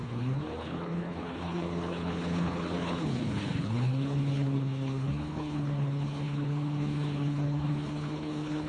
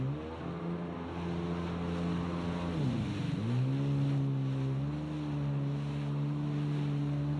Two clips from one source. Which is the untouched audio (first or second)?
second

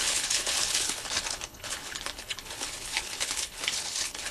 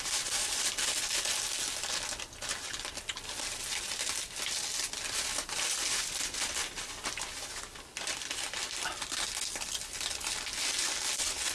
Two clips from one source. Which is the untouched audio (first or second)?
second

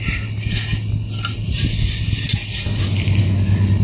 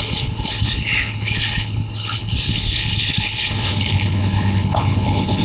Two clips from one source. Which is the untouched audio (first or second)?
first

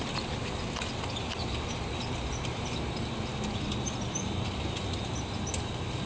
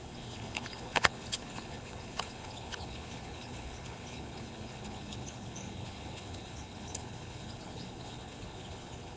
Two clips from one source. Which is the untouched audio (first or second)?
first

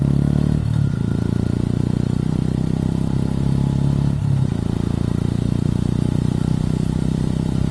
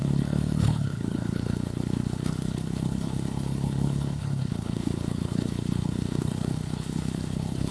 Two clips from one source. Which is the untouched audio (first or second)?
first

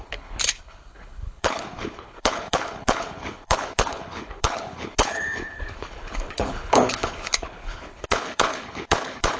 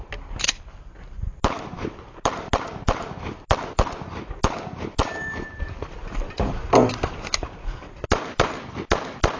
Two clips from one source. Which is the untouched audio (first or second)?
second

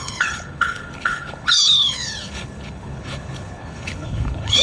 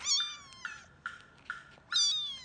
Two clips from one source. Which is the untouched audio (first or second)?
second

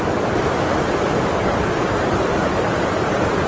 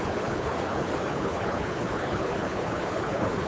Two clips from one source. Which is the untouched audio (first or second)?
first